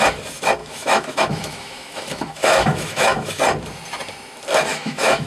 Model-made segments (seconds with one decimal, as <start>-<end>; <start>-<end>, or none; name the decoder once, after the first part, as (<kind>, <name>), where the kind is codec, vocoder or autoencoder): 0.6-3.4 (autoencoder, DAC-VAE); 4.7-5.3